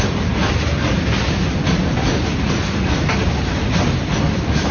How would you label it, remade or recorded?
recorded